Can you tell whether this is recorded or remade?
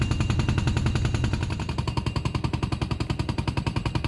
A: recorded